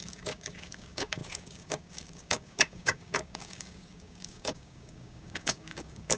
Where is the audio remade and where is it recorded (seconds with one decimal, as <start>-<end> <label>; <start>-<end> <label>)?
0.0-6.2 remade